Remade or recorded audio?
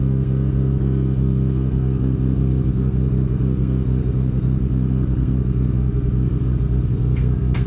remade